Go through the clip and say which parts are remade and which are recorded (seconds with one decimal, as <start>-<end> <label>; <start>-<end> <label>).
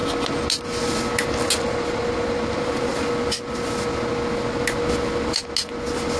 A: 0.0-6.2 recorded